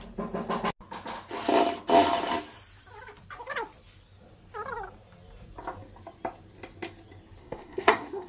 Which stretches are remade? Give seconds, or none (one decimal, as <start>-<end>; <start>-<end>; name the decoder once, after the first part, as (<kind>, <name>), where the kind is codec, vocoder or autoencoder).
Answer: 7.4-8.3 (codec, SNAC)